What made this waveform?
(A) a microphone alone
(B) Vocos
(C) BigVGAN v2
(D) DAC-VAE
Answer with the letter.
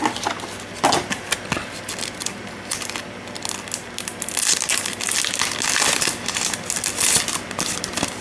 A